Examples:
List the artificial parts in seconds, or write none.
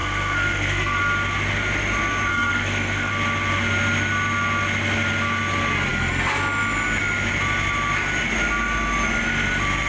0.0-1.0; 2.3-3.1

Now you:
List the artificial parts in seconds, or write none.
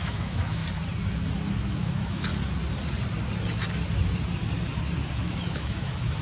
0.0-0.6; 1.5-2.3; 5.1-6.2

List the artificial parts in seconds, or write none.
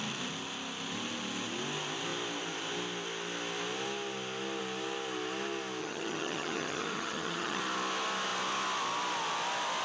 5.8-7.6